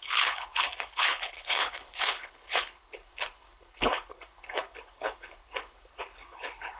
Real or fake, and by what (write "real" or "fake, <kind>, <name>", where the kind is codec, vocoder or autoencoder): fake, codec, HILCodec